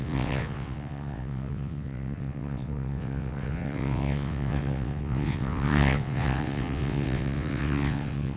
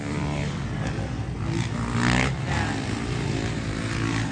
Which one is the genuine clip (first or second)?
second